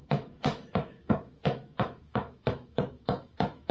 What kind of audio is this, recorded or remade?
remade